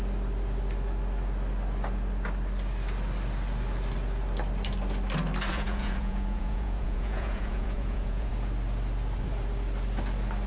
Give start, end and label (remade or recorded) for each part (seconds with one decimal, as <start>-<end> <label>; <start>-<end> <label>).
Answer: 0.0-5.5 recorded; 5.5-8.3 remade; 8.3-10.5 recorded